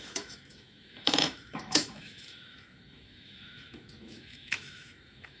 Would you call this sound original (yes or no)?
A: no